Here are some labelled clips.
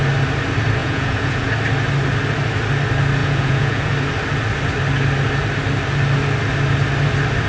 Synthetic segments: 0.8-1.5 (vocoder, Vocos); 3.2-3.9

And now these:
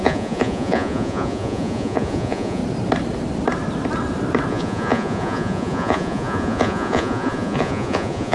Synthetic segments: 0.0-2.6 (vocoder, Vocos); 4.5-8.3